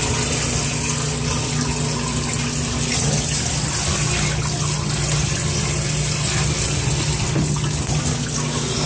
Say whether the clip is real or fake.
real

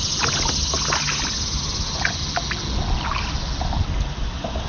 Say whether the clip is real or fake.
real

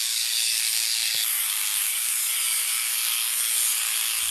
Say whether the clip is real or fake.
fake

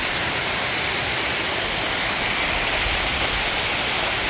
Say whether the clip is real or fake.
real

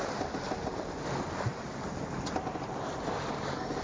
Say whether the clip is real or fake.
real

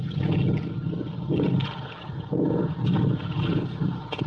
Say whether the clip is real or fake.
real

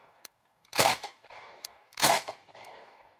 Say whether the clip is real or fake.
fake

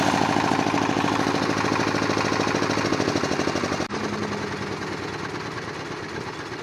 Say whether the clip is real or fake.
real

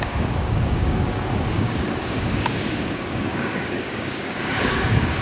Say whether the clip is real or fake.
fake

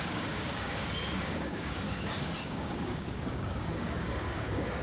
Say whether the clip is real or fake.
fake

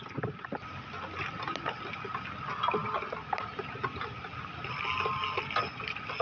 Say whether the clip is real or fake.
real